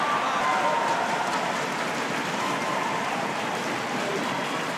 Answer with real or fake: real